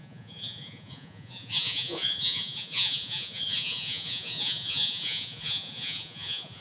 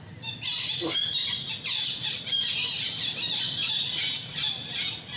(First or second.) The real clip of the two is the second